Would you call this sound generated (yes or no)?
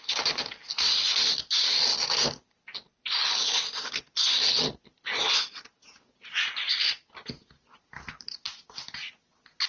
no